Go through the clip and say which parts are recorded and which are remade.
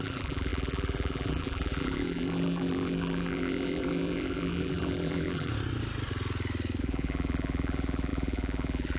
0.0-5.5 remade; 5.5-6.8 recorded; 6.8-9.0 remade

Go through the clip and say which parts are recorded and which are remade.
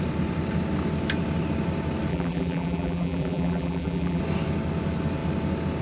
0.0-2.1 recorded; 2.1-4.2 remade; 4.2-5.8 recorded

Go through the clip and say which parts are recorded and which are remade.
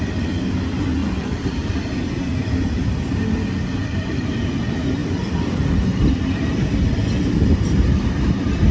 0.0-1.0 recorded; 1.0-1.8 remade; 1.8-3.8 recorded; 3.8-4.6 remade; 4.6-5.0 recorded; 5.0-8.0 remade; 8.0-8.7 recorded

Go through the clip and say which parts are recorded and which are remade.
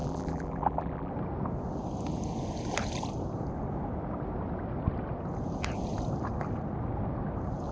0.0-1.1 remade; 1.1-7.7 recorded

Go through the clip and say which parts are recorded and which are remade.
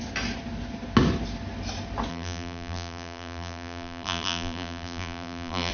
0.0-2.1 recorded; 2.1-5.7 remade